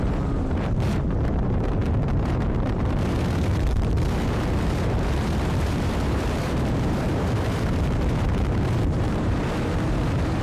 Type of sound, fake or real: fake